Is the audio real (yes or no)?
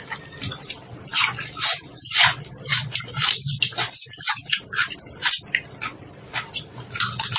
no